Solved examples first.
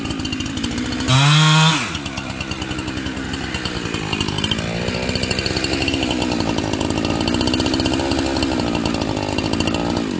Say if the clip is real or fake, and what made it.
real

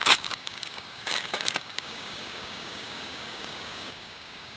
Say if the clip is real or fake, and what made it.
fake, codec, DAC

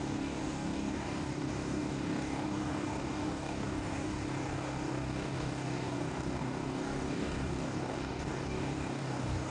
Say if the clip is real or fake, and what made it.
fake, codec, DAC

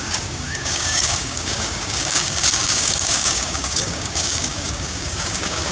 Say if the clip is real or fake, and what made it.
fake, codec, DAC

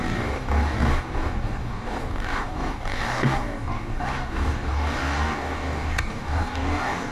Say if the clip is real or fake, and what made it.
fake, codec, DAC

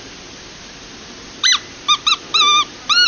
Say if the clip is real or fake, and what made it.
real